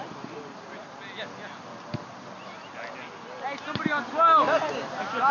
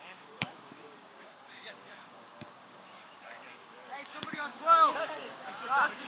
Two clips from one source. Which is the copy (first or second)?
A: second